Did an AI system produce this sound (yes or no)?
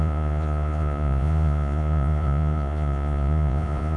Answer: yes